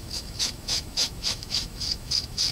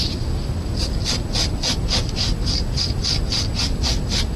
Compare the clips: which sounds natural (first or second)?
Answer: second